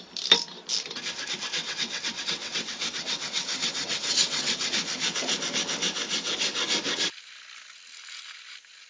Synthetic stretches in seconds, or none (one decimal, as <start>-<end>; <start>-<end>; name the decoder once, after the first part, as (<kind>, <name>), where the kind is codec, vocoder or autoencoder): 1.6-4.7 (vocoder, WaveNeXt)